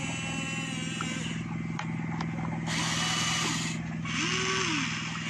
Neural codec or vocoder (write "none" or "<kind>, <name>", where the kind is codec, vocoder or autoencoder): none